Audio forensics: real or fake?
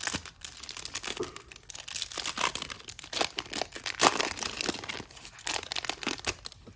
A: real